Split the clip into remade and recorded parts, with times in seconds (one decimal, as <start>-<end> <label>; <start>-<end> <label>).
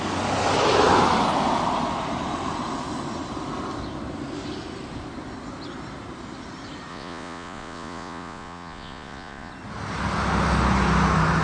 0.0-6.9 recorded; 6.9-9.5 remade; 9.5-11.4 recorded